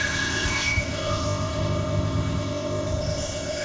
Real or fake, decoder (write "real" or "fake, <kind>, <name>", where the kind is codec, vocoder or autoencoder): fake, codec, ZipCodec